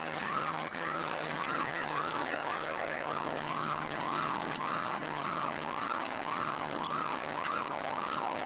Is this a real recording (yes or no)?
no